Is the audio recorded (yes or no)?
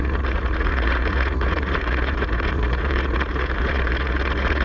no